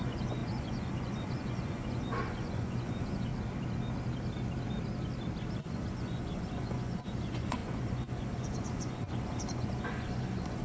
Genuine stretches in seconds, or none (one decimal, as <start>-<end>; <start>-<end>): 3.3-5.5

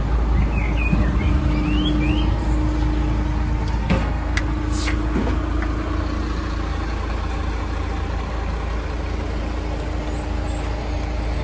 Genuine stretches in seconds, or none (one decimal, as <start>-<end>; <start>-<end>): 0.0-3.8; 4.4-11.4

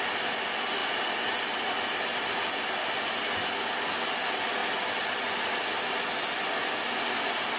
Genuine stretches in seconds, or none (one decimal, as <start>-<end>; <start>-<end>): 0.0-7.6

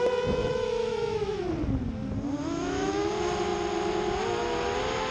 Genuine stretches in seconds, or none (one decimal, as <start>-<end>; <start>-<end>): 0.0-0.4; 1.4-2.4; 3.1-5.1

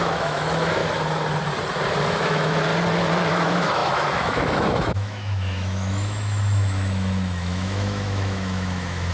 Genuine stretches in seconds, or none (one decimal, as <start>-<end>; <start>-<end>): 0.8-2.0; 2.7-3.3

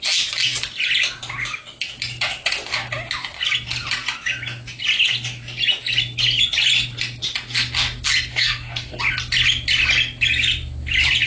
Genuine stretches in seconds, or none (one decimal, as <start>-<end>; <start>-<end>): 0.0-8.3; 9.0-11.3

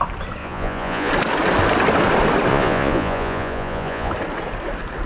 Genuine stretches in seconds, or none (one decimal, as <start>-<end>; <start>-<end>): 0.0-0.4; 1.1-2.5; 4.1-5.1